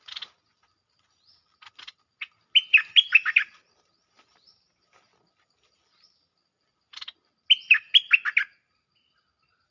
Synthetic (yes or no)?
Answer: no